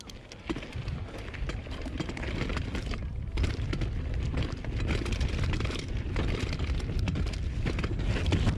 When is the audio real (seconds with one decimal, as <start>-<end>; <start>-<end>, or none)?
0.0-8.6